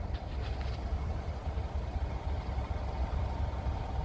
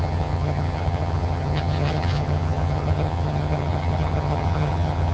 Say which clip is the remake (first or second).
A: second